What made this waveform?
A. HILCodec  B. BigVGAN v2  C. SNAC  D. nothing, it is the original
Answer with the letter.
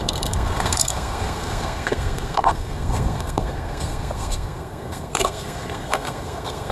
C